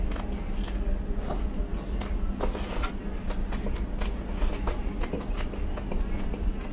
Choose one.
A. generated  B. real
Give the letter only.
B